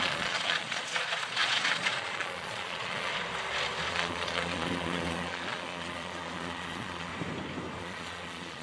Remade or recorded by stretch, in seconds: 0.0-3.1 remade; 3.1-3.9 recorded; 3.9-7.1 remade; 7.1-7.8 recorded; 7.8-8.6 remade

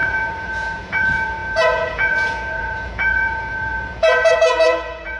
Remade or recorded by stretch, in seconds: 0.0-5.2 remade

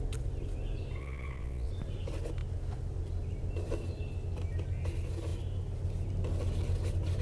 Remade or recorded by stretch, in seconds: 0.0-1.0 recorded; 1.0-1.7 remade; 1.7-7.2 recorded

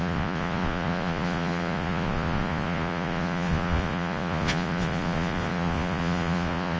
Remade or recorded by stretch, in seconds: 0.0-6.8 remade

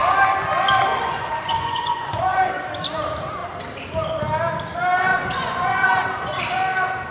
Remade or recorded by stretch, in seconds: 0.0-0.9 recorded; 0.9-2.5 remade; 2.5-5.1 recorded; 5.1-6.4 remade; 6.4-7.1 recorded

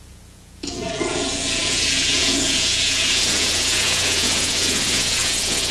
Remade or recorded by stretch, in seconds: 0.0-5.7 remade

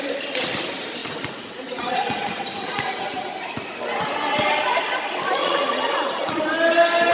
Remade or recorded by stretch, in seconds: 0.0-1.0 recorded; 1.0-3.3 remade; 3.3-5.4 recorded; 5.4-6.4 remade; 6.4-7.1 recorded

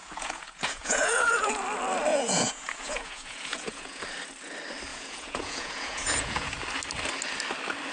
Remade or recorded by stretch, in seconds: 0.0-1.5 remade; 1.5-2.1 recorded; 2.1-4.0 remade; 4.0-4.9 recorded; 4.9-6.6 remade; 6.6-7.9 recorded